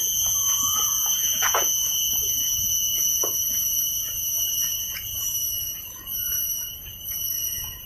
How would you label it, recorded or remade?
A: remade